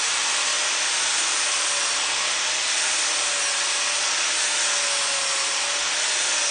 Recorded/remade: recorded